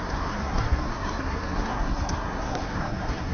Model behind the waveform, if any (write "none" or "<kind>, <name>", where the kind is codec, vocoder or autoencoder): codec, SNAC